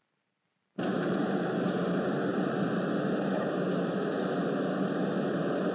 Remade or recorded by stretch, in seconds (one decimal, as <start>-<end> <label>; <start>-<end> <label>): 0.0-0.9 recorded; 0.9-1.7 remade; 1.7-5.7 recorded

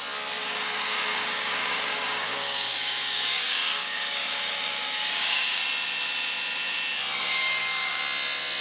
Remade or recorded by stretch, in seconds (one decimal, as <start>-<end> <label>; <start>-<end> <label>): 0.0-0.4 recorded; 0.4-5.6 remade; 5.6-7.2 recorded; 7.2-8.0 remade; 8.0-8.6 recorded

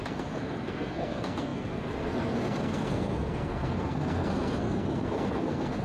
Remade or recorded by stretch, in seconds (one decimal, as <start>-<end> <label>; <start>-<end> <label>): 0.0-5.8 remade

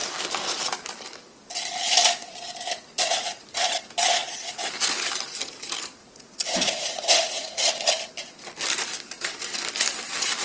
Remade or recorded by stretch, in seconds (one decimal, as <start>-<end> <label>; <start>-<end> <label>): 0.0-4.2 recorded; 4.2-4.7 remade; 4.7-6.0 recorded; 6.0-7.7 remade; 7.7-10.4 recorded

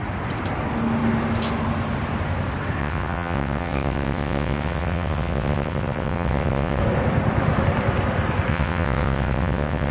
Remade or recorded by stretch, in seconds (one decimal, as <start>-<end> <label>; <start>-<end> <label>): 0.0-2.8 recorded; 2.8-6.8 remade; 6.8-8.5 recorded; 8.5-9.9 remade

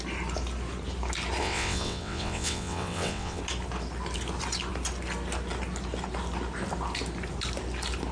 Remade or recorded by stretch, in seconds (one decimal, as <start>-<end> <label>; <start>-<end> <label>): 0.0-1.4 recorded; 1.4-3.4 remade; 3.4-8.1 recorded

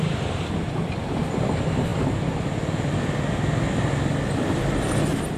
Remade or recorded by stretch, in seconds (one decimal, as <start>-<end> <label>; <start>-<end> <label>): 0.0-5.4 recorded